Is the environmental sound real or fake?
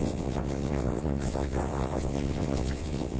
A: fake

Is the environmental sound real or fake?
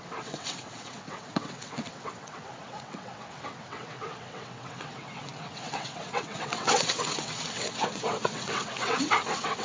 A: fake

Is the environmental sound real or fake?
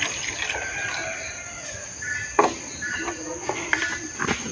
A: real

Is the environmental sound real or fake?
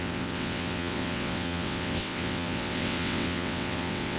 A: fake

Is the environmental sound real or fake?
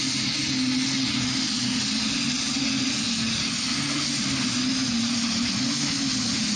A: real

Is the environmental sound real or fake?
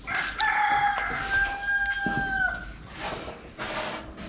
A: real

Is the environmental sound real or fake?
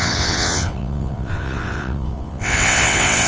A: fake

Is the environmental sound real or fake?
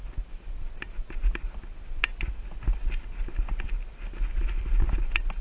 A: real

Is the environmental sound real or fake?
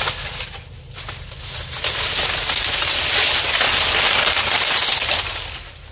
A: real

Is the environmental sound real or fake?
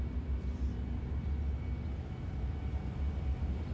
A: real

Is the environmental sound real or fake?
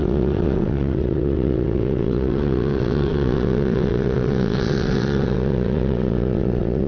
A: fake